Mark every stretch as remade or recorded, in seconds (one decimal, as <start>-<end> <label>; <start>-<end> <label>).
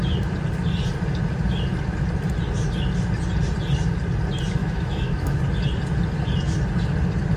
0.0-4.6 recorded; 4.6-5.4 remade; 5.4-7.4 recorded